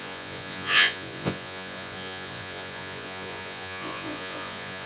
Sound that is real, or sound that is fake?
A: fake